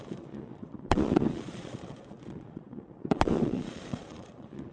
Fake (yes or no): yes